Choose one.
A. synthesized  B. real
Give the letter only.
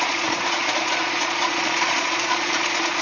A